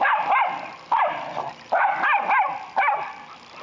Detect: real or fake real